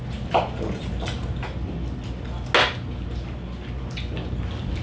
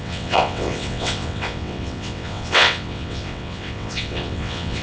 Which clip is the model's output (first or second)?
second